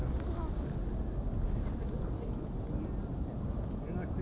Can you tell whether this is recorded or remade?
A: recorded